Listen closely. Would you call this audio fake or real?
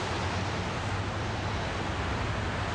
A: real